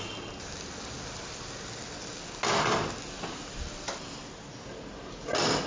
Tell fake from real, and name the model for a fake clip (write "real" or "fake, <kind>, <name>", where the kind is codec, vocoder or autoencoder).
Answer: real